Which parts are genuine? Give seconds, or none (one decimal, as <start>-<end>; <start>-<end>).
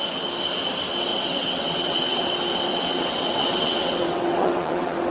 0.0-1.1; 2.3-2.7